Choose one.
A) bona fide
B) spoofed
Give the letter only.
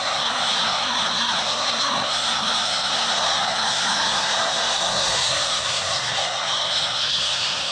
B